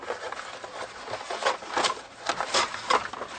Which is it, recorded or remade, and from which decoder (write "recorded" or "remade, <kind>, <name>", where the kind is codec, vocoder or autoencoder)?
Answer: recorded